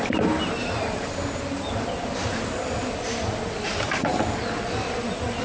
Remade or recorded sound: recorded